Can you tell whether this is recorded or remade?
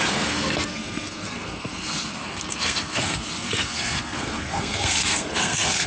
remade